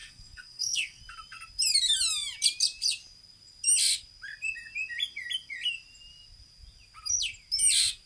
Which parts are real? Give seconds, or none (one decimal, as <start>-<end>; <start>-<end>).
1.0-8.1

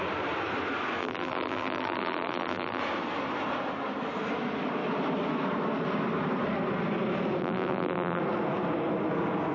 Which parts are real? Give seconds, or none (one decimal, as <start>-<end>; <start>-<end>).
0.0-1.0; 2.8-7.4; 8.2-9.5

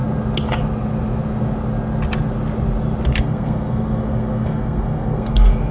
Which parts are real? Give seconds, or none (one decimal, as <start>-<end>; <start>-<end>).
0.0-3.2